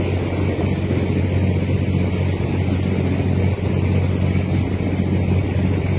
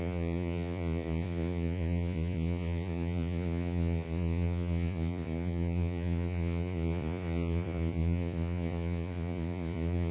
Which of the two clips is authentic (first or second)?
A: first